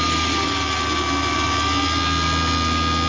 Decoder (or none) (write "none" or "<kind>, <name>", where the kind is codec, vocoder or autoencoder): none